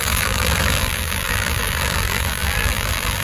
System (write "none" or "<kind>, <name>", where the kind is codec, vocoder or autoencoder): vocoder, BigVGAN v2